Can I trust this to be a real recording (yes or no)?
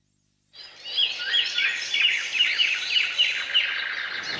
yes